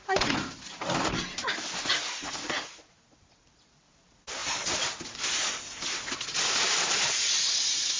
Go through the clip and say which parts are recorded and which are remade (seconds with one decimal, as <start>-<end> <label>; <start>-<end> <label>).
0.0-8.0 recorded